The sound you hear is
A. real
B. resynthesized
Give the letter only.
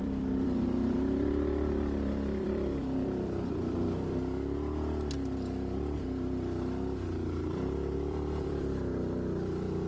B